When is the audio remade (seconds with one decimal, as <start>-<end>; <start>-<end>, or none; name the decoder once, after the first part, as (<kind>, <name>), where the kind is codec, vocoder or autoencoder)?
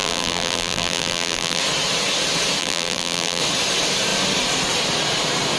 0.0-1.6 (vocoder, BigVGAN v2); 2.6-3.4